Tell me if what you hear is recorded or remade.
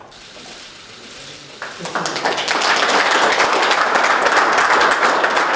recorded